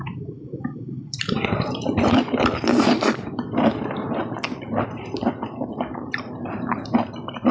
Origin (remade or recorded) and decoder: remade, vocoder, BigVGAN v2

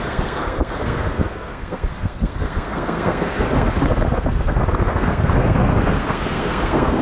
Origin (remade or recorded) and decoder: remade, codec, SNAC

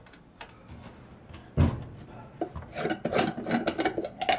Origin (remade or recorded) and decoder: recorded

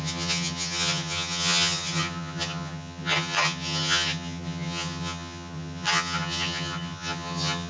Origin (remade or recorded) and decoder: remade, vocoder, HiFi-GAN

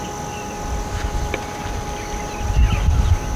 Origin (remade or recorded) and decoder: recorded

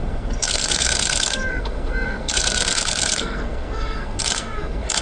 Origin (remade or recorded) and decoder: remade, codec, SNAC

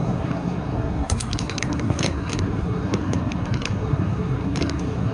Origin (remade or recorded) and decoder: remade, codec, SNAC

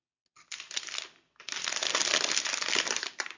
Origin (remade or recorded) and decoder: recorded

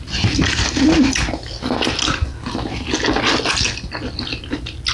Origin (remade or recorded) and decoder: recorded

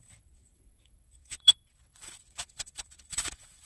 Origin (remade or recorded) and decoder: remade, vocoder, WaveNeXt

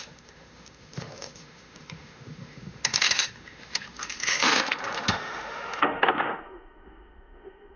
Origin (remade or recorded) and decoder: remade, autoencoder, DAC-VAE